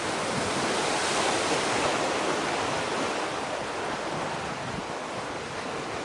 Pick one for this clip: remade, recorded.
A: recorded